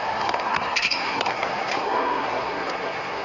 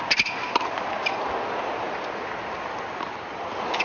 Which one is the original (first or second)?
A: second